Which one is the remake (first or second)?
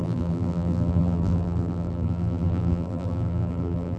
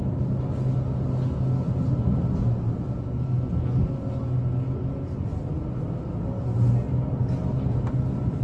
first